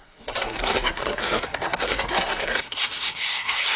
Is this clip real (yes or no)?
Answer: no